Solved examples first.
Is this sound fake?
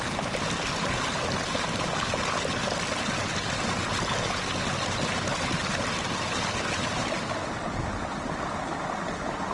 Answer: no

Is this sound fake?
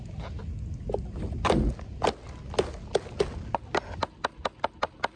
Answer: no